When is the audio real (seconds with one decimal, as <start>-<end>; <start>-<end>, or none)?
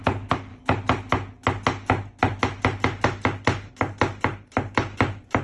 0.0-5.4